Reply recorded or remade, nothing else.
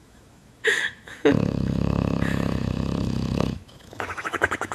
remade